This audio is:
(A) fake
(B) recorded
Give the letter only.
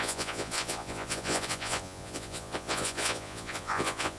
A